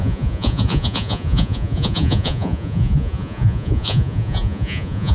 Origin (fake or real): fake